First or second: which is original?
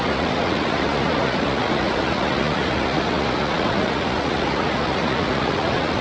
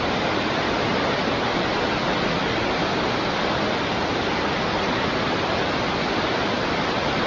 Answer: second